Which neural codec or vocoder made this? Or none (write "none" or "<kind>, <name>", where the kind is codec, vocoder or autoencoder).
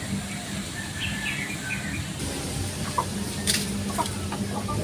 none